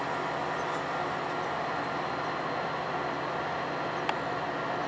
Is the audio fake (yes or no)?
no